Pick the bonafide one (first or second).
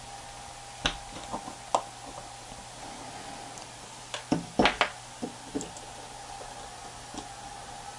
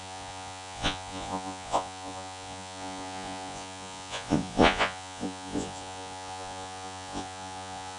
first